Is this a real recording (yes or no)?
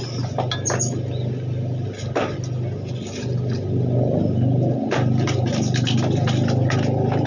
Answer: yes